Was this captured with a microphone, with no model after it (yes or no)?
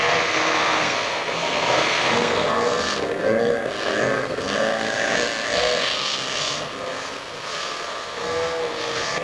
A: no